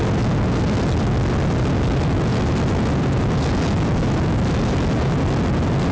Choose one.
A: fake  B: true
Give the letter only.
B